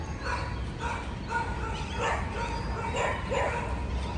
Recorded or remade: recorded